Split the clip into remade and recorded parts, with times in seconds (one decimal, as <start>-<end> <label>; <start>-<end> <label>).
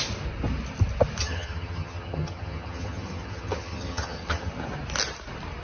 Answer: 0.0-1.2 recorded; 1.2-4.5 remade; 4.5-5.6 recorded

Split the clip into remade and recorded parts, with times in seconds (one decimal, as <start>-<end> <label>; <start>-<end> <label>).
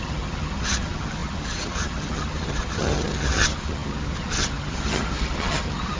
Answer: 0.0-6.0 remade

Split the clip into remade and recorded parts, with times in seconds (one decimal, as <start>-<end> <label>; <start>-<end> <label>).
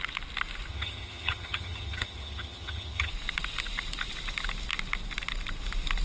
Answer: 0.0-0.7 recorded; 0.7-3.1 remade; 3.1-6.0 recorded